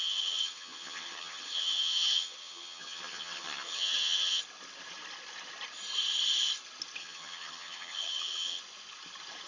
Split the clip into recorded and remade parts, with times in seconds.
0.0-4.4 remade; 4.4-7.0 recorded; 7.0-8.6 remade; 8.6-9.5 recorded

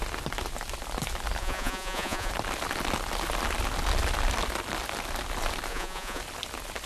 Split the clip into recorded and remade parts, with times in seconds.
0.0-1.4 recorded; 1.4-2.3 remade; 2.3-5.7 recorded; 5.7-6.2 remade; 6.2-6.9 recorded

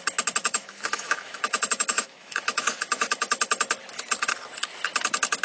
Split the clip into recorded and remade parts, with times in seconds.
0.0-0.4 recorded; 0.4-3.6 remade; 3.6-5.4 recorded

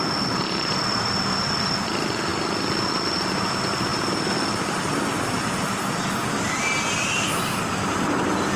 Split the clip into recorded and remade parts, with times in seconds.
0.0-8.6 recorded

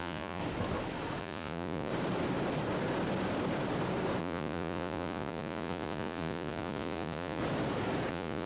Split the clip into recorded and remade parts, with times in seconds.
0.0-0.4 remade; 0.4-1.2 recorded; 1.2-1.9 remade; 1.9-4.2 recorded; 4.2-7.4 remade; 7.4-8.1 recorded; 8.1-8.5 remade

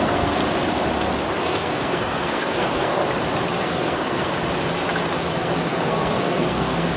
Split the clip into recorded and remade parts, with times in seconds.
0.0-0.4 remade; 0.4-1.4 recorded; 1.4-3.0 remade; 3.0-3.6 recorded; 3.6-4.3 remade; 4.3-5.2 recorded; 5.2-7.0 remade